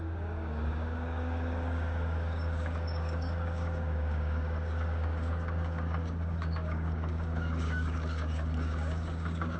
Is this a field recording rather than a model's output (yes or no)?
no